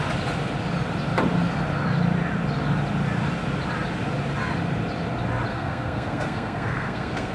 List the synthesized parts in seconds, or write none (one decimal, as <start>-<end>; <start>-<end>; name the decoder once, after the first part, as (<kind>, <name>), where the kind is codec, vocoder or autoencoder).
5.5-7.3 (codec, SNAC)